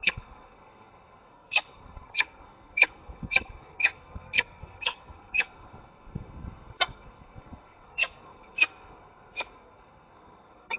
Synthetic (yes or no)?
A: yes